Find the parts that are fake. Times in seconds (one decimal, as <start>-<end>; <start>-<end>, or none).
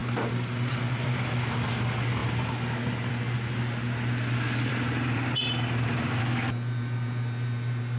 4.7-6.2